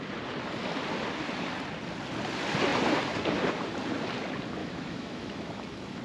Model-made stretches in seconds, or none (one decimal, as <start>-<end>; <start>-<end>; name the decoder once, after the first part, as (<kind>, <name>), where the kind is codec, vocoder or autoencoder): 4.6-6.0 (autoencoder, DAC-VAE)